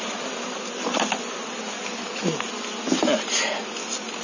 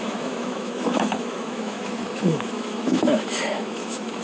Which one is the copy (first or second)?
second